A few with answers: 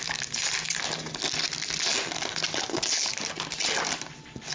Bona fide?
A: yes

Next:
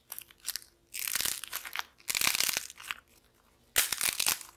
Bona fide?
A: yes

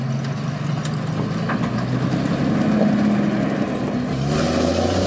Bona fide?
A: yes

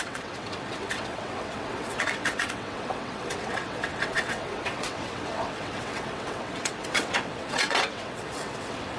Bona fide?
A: no